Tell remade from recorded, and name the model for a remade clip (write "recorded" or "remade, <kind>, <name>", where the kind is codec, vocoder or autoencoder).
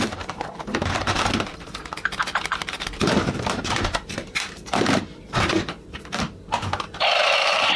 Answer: remade, vocoder, BigVGAN v2